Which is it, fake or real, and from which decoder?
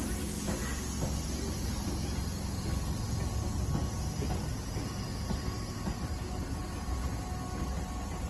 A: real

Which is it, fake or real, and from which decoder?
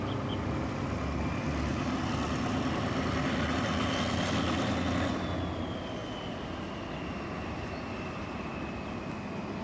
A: real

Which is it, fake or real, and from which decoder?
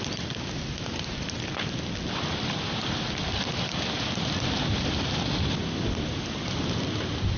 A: real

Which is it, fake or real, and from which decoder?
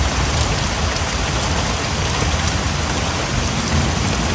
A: real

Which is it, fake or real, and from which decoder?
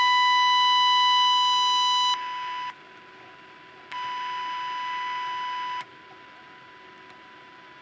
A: real